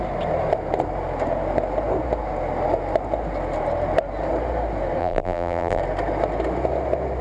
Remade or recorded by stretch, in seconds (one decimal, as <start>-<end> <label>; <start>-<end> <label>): 0.0-5.0 recorded; 5.0-5.8 remade; 5.8-7.2 recorded